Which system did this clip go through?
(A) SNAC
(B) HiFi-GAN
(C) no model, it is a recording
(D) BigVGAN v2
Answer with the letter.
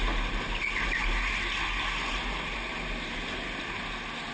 C